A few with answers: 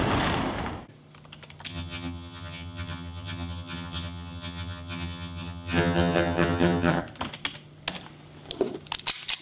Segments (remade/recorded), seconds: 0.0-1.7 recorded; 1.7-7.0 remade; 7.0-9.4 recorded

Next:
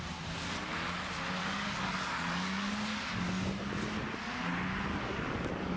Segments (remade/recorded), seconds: 0.0-1.4 recorded; 1.4-3.6 remade; 3.6-4.9 recorded; 4.9-5.8 remade

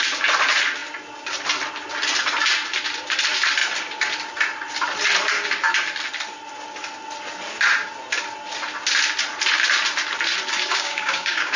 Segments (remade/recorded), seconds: 0.0-10.6 recorded; 10.6-11.6 remade

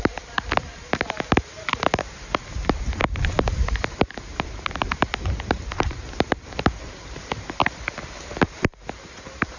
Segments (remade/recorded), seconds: 0.0-7.6 remade; 7.6-8.4 recorded; 8.4-9.6 remade

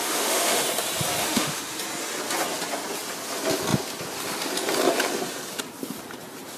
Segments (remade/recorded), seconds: 0.0-0.6 remade; 0.6-1.2 recorded; 1.2-1.8 remade; 1.8-6.6 recorded

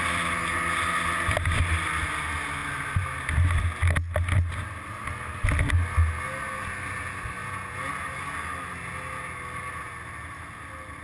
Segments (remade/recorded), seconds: 0.0-7.4 recorded; 7.4-7.9 remade; 7.9-11.0 recorded

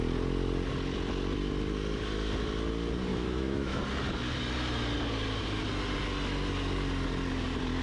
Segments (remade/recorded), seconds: 0.0-3.1 recorded; 3.1-3.8 remade; 3.8-7.8 recorded

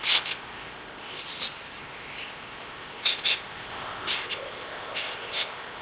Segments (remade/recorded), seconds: 0.0-1.2 remade; 1.2-1.8 recorded; 1.8-5.8 remade